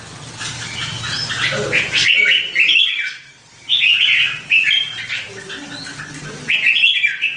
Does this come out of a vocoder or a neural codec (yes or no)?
no